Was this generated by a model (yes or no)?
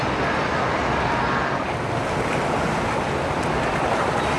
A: no